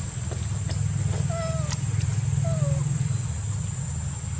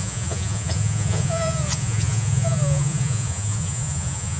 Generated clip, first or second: second